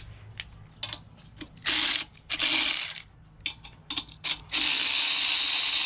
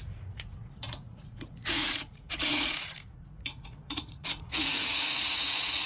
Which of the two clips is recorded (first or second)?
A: first